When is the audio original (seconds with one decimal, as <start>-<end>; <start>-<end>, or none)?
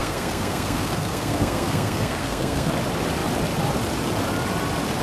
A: 2.7-5.0